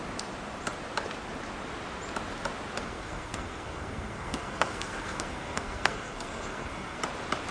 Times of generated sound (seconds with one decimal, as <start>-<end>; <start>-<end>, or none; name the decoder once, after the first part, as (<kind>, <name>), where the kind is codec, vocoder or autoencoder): 2.8-7.0 (codec, SNAC)